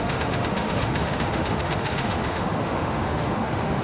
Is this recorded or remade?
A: remade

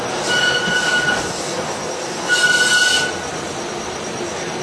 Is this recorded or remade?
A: recorded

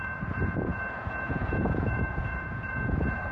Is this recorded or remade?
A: remade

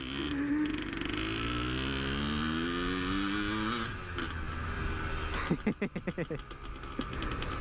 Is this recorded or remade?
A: recorded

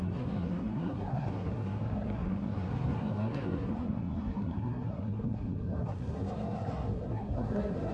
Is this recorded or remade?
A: remade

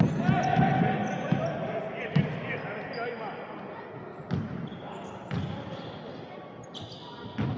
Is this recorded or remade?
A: recorded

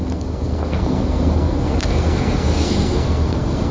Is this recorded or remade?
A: remade